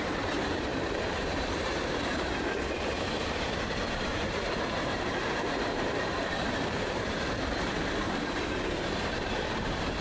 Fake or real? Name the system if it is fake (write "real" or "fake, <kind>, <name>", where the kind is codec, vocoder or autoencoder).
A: fake, vocoder, BigVGAN v2